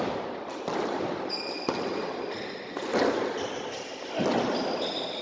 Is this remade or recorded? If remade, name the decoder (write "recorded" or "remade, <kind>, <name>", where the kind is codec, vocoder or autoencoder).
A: recorded